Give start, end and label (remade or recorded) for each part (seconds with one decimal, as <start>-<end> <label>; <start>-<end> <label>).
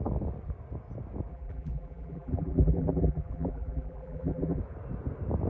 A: 0.0-1.3 recorded; 1.3-4.6 remade; 4.6-5.5 recorded